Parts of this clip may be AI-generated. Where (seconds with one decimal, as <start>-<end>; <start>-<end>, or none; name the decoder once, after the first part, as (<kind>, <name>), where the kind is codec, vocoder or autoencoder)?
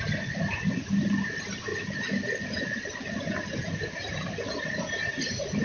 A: none